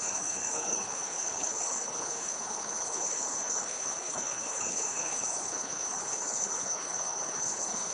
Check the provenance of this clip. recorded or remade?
remade